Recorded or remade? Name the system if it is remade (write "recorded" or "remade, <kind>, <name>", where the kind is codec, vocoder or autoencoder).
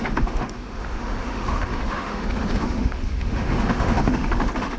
remade, autoencoder, DAC-VAE